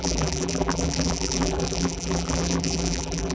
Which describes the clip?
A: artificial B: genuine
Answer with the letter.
A